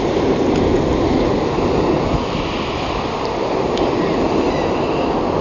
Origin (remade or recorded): recorded